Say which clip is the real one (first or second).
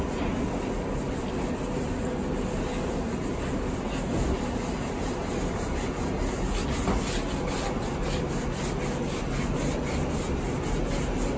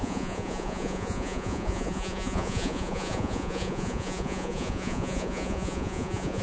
first